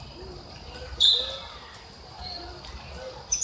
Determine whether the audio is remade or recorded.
recorded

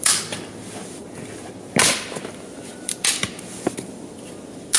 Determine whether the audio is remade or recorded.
recorded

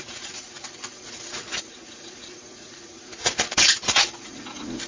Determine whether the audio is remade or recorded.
remade